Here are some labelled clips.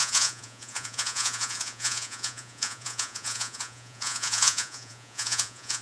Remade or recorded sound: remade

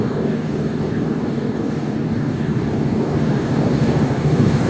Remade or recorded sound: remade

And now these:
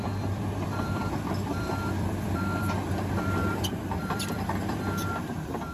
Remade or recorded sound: remade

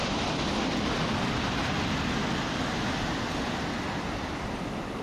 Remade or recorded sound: recorded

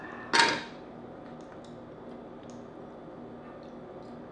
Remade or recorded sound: recorded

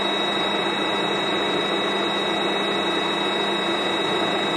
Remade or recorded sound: recorded